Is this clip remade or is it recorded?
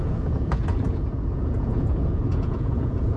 remade